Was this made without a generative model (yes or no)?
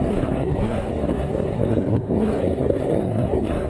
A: no